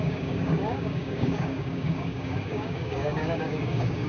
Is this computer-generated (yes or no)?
yes